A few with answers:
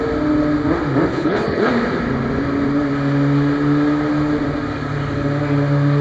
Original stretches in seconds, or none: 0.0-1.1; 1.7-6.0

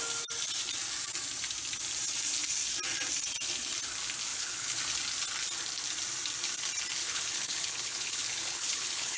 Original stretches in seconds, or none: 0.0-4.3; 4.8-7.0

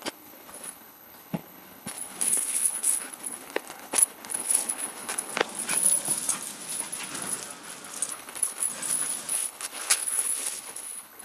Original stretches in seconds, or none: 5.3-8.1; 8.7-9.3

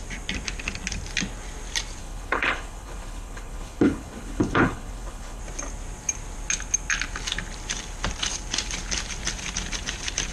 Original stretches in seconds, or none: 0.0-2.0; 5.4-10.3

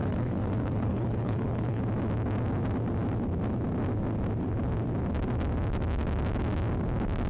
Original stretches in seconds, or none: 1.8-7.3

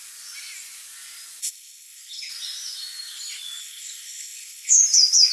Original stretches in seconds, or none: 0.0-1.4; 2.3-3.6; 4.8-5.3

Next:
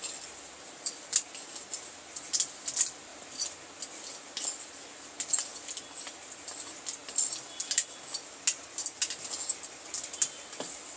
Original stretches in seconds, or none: 0.0-11.0